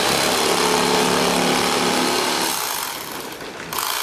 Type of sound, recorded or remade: recorded